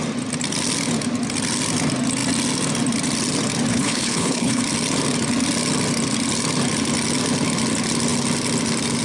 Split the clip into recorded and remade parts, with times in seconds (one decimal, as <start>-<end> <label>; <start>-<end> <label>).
0.0-3.7 recorded; 3.7-4.6 remade; 4.6-9.0 recorded